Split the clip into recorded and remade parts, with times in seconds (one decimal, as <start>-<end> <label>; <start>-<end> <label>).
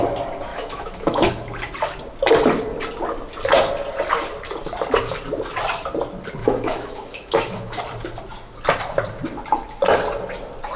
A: 0.0-0.5 recorded; 0.5-1.3 remade; 1.3-6.4 recorded; 6.4-7.8 remade; 7.8-10.8 recorded